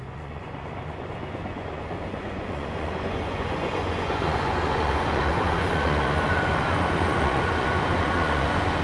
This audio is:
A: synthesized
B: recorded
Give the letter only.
A